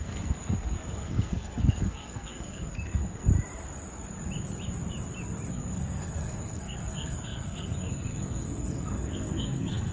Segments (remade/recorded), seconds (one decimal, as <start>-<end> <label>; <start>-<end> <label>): 0.0-3.3 remade; 3.3-5.5 recorded; 5.5-9.9 remade